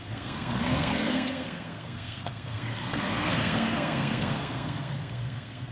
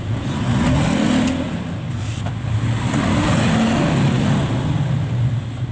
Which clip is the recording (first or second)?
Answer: second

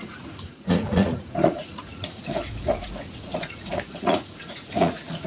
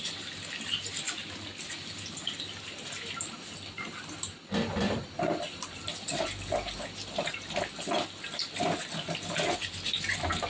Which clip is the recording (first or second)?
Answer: second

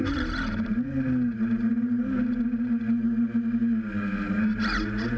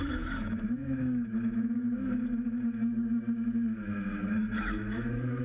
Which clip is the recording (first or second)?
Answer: first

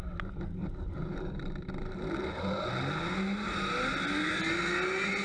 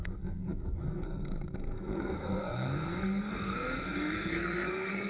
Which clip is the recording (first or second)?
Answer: first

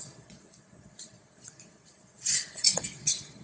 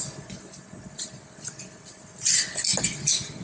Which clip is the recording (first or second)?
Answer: second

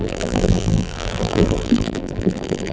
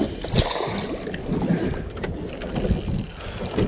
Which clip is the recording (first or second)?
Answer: second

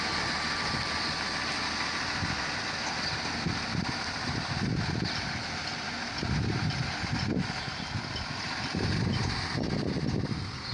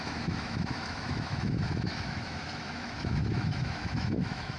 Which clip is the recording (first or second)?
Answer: first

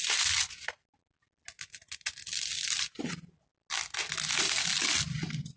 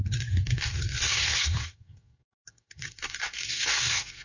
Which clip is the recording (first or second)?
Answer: first